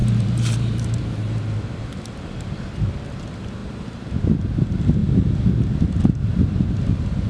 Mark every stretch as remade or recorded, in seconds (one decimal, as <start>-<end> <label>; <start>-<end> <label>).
0.0-1.4 remade; 1.4-3.6 recorded; 3.6-4.2 remade; 4.2-7.3 recorded

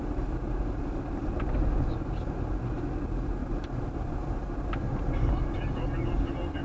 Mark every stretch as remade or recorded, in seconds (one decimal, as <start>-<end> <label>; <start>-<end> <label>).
0.0-0.9 remade; 0.9-3.4 recorded; 3.4-5.3 remade; 5.3-6.6 recorded